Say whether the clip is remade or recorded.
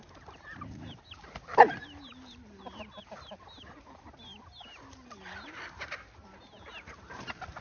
recorded